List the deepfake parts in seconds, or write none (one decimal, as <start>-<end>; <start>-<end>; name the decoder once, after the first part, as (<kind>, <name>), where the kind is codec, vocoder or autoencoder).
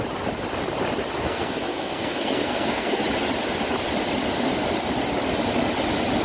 1.2-3.0 (codec, SNAC)